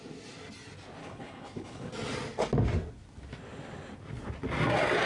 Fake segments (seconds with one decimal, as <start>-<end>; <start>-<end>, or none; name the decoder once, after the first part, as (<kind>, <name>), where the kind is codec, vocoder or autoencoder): 1.0-1.9 (codec, HILCodec)